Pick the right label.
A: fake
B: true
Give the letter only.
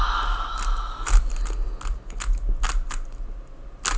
B